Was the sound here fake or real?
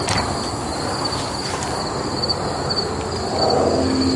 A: real